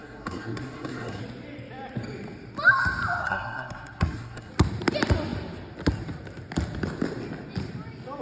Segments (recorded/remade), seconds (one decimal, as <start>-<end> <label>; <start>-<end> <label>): 0.0-1.2 remade; 1.2-3.2 recorded; 3.2-4.5 remade; 4.5-8.2 recorded